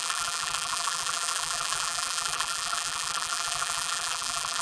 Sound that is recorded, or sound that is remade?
remade